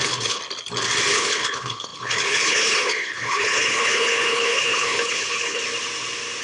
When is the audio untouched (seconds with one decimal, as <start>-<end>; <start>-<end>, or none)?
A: 0.4-1.1; 5.6-6.4

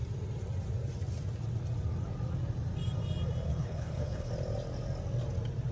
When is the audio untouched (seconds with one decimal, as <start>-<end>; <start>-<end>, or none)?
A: 0.0-3.5; 4.3-5.7

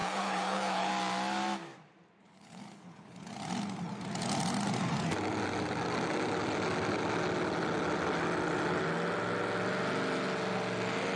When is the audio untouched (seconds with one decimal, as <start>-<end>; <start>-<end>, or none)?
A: 0.9-2.2; 3.3-11.2